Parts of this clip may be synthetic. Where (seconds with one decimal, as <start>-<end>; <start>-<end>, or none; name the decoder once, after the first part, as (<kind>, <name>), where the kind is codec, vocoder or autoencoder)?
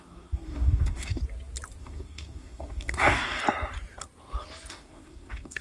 0.0-1.2 (codec, DAC); 1.8-3.4; 4.7-5.6